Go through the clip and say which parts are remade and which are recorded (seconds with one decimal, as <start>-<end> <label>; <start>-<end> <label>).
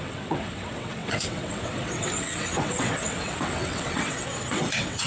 0.0-5.1 remade